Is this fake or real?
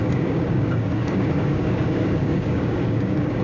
fake